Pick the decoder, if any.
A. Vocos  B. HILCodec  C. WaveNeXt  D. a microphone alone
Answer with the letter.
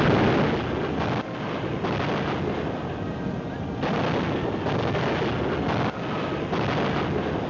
D